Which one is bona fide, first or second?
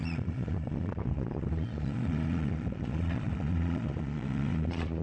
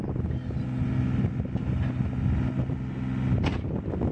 second